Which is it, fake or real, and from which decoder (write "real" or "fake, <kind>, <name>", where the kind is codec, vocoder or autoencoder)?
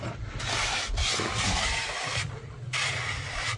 real